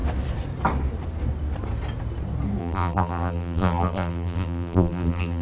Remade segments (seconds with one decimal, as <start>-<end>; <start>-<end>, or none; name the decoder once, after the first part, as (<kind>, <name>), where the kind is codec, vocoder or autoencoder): 2.6-5.4 (vocoder, BigVGAN v2)